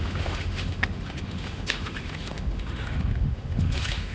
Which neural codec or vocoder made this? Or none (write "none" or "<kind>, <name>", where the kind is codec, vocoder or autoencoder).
autoencoder, DAC-VAE